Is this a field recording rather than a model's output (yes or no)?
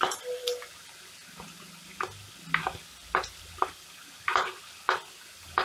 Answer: yes